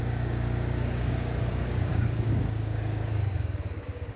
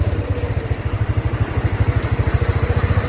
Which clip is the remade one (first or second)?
first